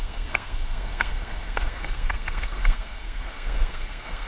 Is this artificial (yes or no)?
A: yes